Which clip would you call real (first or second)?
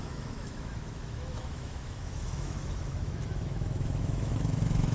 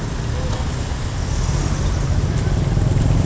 second